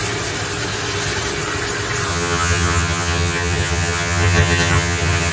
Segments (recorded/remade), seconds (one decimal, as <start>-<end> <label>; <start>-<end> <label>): 0.0-2.1 recorded; 2.1-5.3 remade